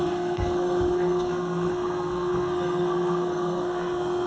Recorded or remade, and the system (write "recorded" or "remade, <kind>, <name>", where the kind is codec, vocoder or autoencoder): remade, codec, SNAC